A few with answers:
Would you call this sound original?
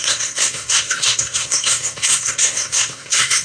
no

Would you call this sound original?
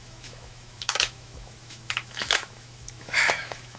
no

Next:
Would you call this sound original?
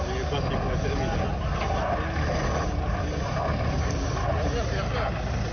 yes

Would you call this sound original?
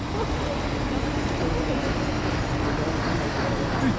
yes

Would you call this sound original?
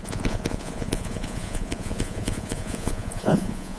no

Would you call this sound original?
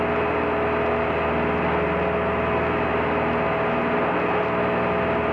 yes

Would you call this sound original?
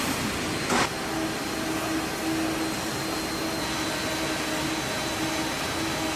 yes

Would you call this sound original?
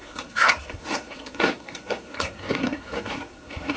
no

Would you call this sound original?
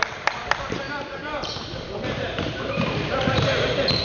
no